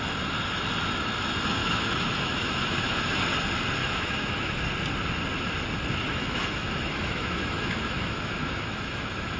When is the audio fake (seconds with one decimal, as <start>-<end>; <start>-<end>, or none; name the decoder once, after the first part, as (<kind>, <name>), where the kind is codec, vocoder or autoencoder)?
1.6-3.2 (autoencoder, DAC-VAE); 3.8-4.6; 6.0-9.4